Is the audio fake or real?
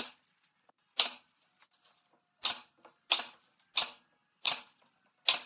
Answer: real